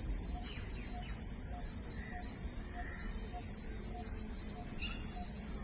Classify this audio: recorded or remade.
recorded